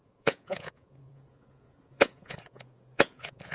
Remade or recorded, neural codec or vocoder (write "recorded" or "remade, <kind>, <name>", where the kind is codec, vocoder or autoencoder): remade, vocoder, Vocos